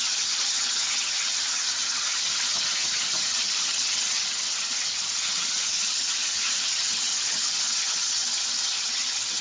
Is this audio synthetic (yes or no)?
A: yes